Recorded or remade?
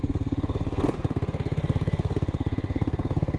remade